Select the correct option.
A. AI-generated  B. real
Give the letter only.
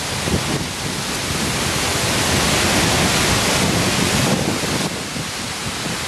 B